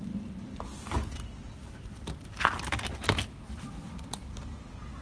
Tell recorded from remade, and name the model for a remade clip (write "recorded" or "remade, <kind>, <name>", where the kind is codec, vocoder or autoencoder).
recorded